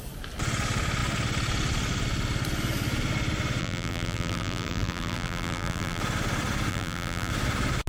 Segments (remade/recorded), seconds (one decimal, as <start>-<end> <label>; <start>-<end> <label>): 0.0-3.6 recorded; 3.6-6.0 remade; 6.0-6.7 recorded; 6.7-7.3 remade; 7.3-7.9 recorded